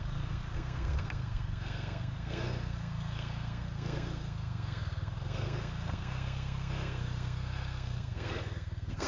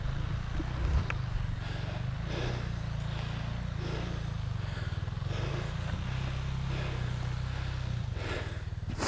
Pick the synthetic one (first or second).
first